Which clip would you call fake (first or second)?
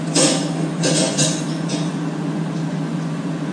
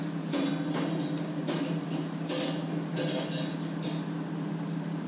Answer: first